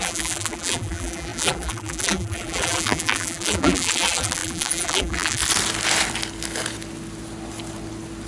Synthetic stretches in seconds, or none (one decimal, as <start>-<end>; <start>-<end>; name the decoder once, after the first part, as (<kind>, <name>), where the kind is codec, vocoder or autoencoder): 0.0-5.4 (vocoder, BigVGAN v2)